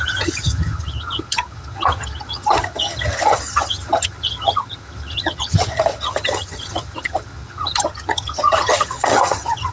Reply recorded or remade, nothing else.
remade